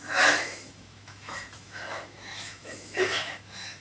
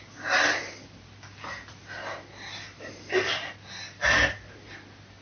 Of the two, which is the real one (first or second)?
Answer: second